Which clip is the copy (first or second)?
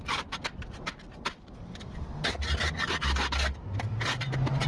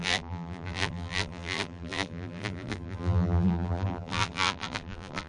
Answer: second